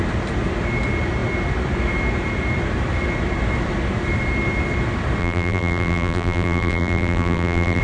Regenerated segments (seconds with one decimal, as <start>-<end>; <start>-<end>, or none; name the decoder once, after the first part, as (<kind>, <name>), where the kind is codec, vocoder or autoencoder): 5.2-7.8 (vocoder, BigVGAN v2)